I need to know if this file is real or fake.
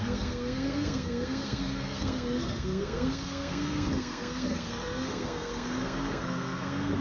fake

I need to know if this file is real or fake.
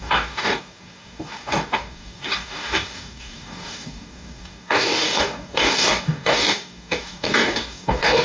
fake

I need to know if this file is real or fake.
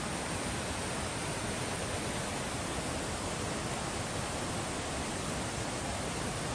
real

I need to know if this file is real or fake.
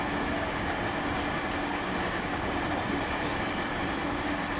real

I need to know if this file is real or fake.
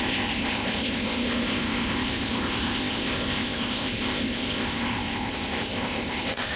fake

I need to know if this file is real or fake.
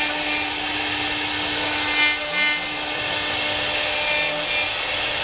real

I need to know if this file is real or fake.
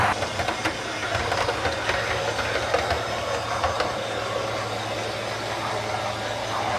real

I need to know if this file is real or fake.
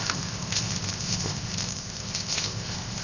fake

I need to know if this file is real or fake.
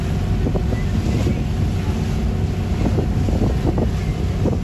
real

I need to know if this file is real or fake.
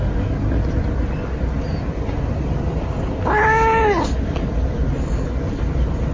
real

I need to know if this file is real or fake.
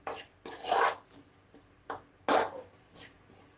real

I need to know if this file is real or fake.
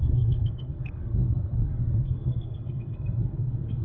fake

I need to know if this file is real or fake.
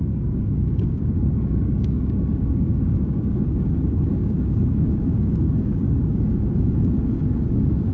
fake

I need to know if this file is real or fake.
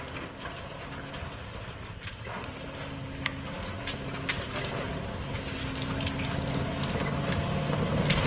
real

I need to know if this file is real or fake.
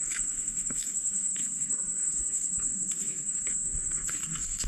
fake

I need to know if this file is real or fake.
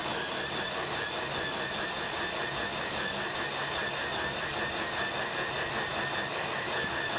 real